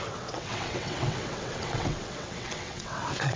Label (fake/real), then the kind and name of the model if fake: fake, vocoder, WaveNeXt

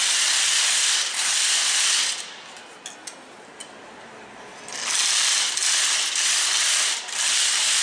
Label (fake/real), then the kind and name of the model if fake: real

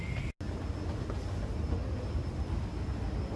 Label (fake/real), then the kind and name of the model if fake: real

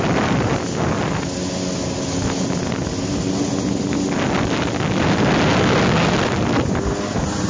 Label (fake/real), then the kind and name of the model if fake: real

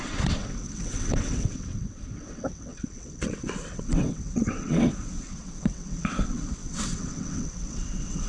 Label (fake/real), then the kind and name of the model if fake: fake, vocoder, WaveNeXt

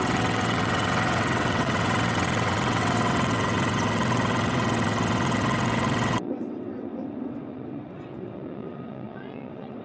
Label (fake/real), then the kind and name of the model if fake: fake, vocoder, WaveNeXt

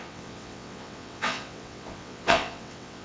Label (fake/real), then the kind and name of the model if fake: fake, vocoder, WaveNeXt